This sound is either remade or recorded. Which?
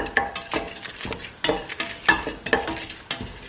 recorded